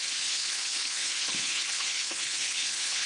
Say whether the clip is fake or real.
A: fake